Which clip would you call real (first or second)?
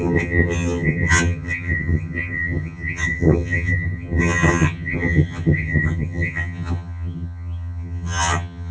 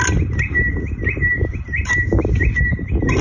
second